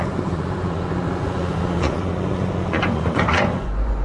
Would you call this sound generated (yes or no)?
yes